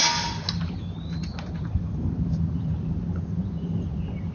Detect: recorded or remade recorded